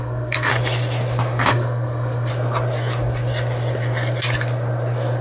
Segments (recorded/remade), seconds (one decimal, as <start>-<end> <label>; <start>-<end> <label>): 0.0-0.5 remade; 0.5-1.5 recorded; 1.5-2.3 remade; 2.3-5.2 recorded